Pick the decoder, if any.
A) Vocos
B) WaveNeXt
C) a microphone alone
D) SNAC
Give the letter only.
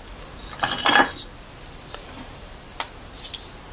C